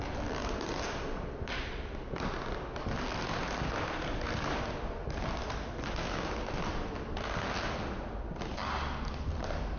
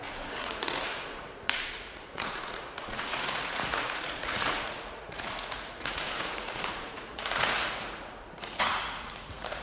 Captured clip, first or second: first